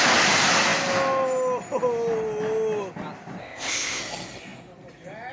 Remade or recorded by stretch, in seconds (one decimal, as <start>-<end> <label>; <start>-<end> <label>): 0.0-3.4 recorded; 3.4-4.0 remade; 4.0-5.3 recorded